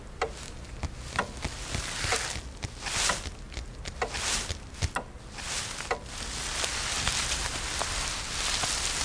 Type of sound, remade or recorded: recorded